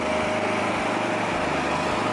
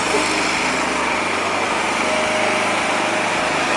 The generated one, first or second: first